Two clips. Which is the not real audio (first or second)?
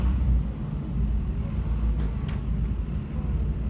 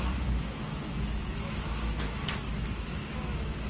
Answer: second